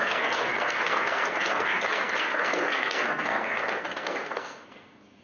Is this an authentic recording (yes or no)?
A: no